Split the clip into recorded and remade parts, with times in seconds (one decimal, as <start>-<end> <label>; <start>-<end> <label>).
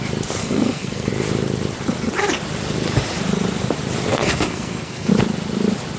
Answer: 0.0-0.4 recorded; 0.4-1.1 remade; 1.1-4.1 recorded; 4.1-5.1 remade; 5.1-6.0 recorded